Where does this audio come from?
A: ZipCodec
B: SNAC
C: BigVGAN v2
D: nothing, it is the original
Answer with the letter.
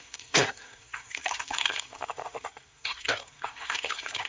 B